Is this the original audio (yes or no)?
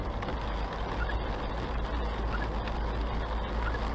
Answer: yes